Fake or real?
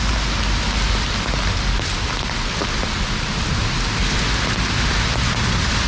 real